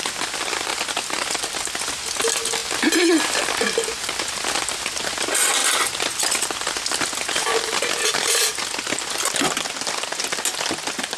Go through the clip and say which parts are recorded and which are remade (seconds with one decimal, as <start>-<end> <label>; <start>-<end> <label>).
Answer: 0.0-11.2 recorded